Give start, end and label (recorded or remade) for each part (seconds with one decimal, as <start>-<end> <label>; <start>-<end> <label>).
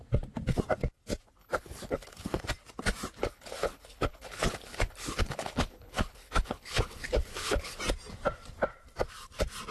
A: 0.0-1.4 recorded; 1.4-2.4 remade; 2.4-3.2 recorded; 3.2-7.8 remade; 7.8-9.7 recorded